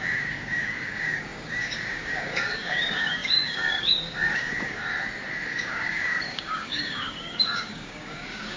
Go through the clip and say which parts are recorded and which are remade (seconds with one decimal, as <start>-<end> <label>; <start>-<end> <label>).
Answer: 0.0-4.8 remade; 4.8-5.5 recorded; 5.5-8.6 remade